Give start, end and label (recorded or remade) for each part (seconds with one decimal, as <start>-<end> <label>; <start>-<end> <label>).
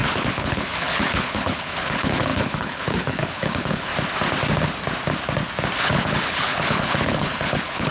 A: 0.0-3.9 remade; 3.9-5.8 recorded; 5.8-7.9 remade